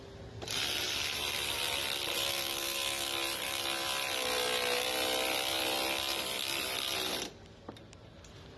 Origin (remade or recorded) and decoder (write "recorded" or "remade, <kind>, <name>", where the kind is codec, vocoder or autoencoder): recorded